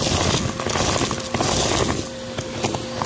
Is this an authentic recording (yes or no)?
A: yes